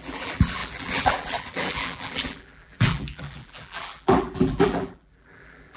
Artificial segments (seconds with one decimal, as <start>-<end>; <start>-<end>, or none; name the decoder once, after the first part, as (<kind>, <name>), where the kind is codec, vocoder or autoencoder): 0.0-5.8 (vocoder, BigVGAN v2)